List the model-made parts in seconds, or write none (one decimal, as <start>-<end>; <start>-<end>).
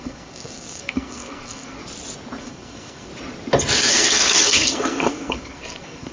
0.0-1.8; 2.4-3.1; 3.7-6.1